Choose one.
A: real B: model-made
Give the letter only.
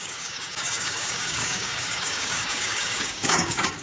B